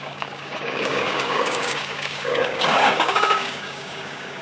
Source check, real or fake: fake